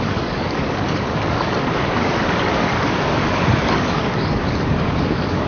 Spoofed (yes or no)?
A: yes